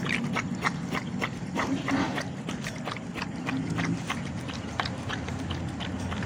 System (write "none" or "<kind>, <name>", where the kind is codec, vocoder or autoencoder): none